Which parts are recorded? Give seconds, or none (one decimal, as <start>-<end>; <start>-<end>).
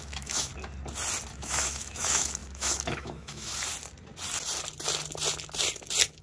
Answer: 0.5-1.3; 3.5-6.2